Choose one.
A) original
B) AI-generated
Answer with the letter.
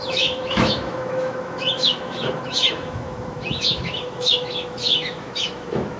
B